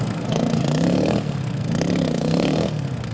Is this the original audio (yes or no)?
no